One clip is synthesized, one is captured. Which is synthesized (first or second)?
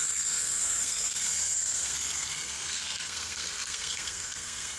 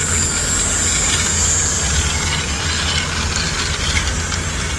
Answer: first